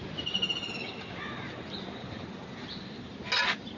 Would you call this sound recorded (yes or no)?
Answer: yes